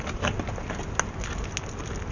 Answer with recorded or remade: recorded